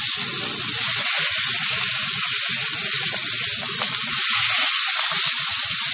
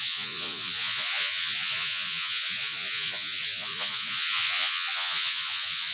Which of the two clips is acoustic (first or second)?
first